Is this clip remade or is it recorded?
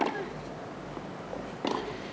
recorded